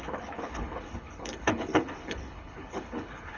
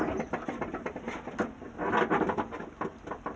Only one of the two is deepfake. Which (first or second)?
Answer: first